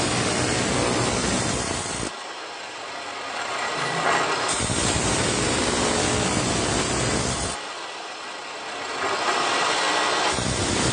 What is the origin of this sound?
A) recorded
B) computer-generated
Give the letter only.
A